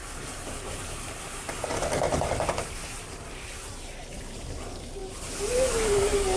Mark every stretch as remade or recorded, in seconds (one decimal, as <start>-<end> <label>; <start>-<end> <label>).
0.0-6.4 recorded